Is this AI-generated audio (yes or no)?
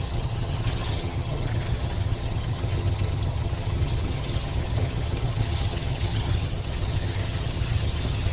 yes